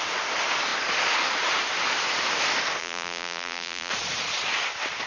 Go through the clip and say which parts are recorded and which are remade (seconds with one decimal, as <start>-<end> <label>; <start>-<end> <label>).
0.0-2.8 recorded; 2.8-3.9 remade; 3.9-5.1 recorded